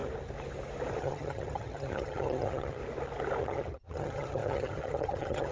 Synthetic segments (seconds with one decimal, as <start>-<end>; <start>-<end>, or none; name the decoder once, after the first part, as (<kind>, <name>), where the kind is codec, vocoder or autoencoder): 1.0-2.8 (vocoder, HiFi-GAN); 3.4-5.5